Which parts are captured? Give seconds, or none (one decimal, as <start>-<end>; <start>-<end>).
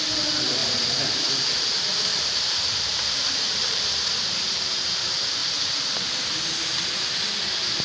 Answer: 0.0-2.1; 4.4-7.8